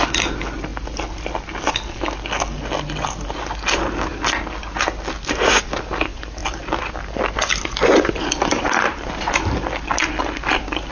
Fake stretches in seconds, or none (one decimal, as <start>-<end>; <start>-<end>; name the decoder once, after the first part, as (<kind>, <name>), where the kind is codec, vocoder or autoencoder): 6.4-9.2 (vocoder, BigVGAN v2)